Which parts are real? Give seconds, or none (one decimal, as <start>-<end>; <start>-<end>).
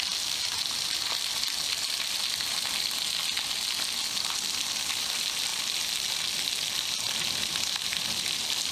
0.0-8.7